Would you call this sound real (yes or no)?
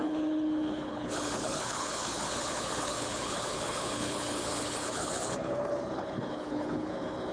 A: no